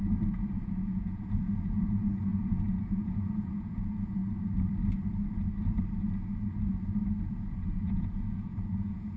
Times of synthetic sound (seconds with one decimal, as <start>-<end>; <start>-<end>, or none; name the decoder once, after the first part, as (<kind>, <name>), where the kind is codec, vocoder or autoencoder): 0.0-4.2 (vocoder, Vocos); 7.2-9.2